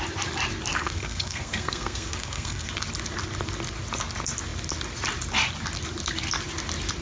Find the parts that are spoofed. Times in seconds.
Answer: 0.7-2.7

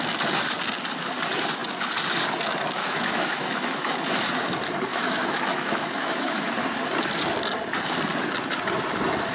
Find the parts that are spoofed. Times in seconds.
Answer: 2.8-4.1; 4.9-6.3

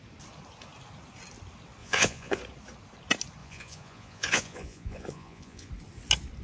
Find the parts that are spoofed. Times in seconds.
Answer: 1.8-2.4; 3.4-5.7

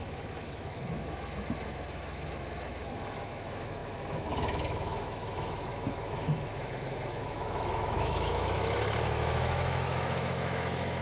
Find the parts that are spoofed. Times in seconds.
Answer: 0.0-11.0

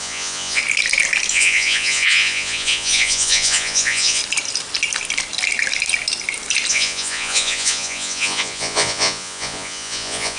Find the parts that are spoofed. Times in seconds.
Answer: 0.0-0.6; 1.3-4.2; 6.7-10.4

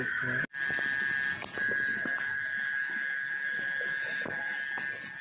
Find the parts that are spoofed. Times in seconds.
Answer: 1.9-4.6

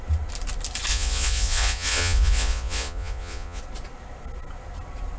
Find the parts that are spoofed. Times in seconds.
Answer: 0.9-3.6